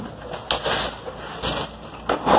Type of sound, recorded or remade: recorded